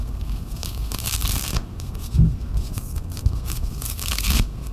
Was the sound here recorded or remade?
remade